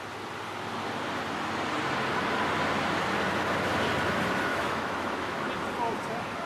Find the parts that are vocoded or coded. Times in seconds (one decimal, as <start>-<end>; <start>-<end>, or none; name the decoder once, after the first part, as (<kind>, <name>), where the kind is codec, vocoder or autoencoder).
4.5-5.5 (autoencoder, DAC-VAE)